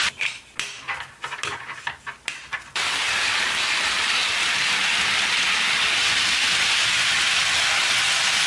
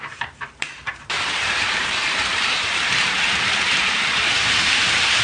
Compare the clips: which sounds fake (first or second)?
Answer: second